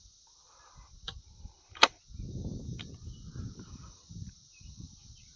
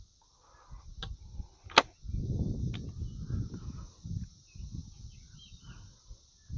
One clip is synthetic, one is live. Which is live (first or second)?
second